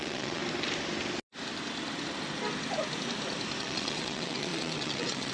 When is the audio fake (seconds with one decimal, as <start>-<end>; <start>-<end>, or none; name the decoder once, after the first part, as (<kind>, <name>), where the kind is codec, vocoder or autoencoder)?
0.0-0.4 (vocoder, WaveNeXt); 3.6-5.3